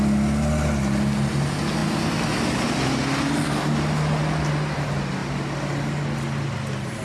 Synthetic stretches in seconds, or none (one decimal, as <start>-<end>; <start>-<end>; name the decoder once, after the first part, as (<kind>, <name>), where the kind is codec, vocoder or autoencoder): none